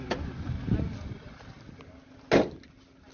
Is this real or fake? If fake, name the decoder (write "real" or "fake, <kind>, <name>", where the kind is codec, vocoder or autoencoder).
real